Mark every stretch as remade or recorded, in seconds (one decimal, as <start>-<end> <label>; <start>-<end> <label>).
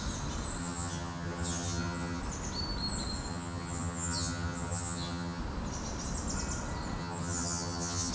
0.0-0.6 recorded; 0.6-2.2 remade; 2.2-3.3 recorded; 3.3-5.4 remade; 5.4-7.0 recorded; 7.0-8.1 remade